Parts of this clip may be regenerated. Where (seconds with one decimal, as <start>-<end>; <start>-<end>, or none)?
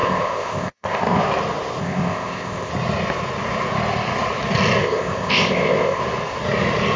0.0-1.2; 1.8-2.7; 4.8-6.0